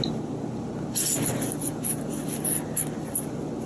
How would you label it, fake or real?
real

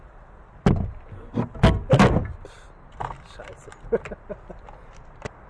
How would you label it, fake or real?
real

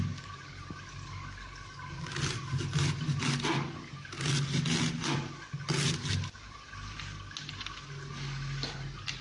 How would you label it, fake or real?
real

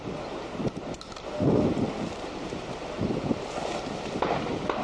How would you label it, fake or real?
real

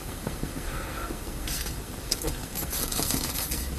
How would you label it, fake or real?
fake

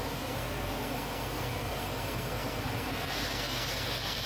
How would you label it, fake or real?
fake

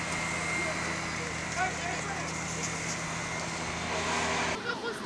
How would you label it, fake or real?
real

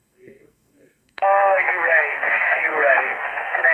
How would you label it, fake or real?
fake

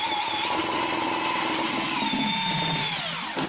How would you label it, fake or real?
real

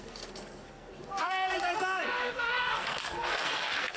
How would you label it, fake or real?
fake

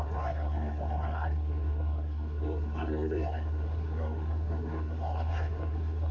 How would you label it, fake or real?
fake